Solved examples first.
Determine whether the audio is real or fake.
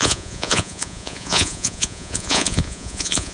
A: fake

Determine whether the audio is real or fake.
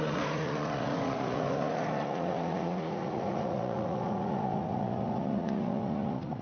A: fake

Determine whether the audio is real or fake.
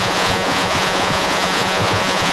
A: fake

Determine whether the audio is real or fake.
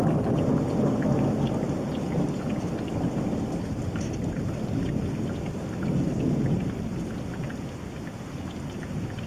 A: real